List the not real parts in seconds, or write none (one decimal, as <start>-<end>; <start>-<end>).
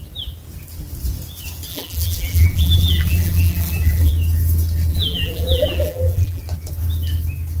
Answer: 1.7-4.1; 4.9-6.4